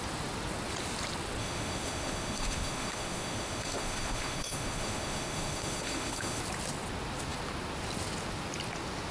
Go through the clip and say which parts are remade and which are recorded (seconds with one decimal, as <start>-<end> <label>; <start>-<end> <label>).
0.0-1.4 recorded; 1.4-6.4 remade; 6.4-9.1 recorded